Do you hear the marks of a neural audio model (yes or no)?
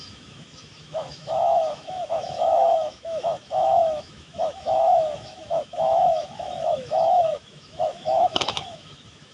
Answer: yes